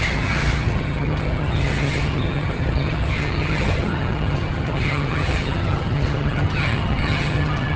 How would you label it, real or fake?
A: fake